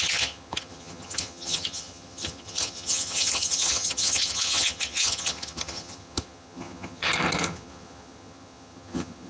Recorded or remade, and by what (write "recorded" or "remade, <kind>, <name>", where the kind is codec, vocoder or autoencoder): remade, vocoder, HiFi-GAN